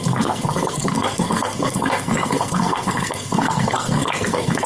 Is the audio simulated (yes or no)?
yes